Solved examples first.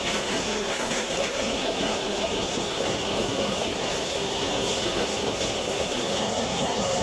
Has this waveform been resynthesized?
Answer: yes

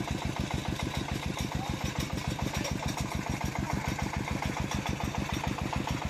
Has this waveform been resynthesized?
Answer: no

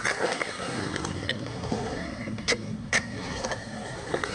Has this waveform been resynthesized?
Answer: yes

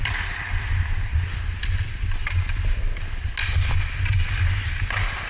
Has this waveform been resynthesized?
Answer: no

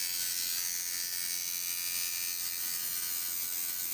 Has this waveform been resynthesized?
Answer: no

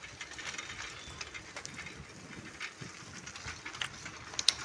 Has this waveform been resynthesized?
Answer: no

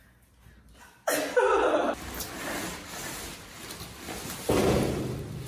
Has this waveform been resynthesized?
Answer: no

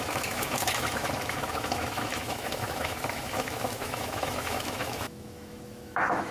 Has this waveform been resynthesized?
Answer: yes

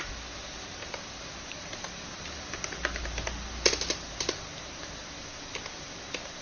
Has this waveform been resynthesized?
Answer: no